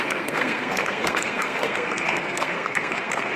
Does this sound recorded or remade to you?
remade